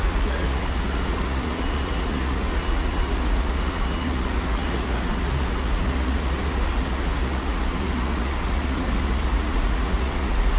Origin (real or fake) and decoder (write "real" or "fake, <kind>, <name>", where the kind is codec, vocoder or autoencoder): fake, vocoder, Vocos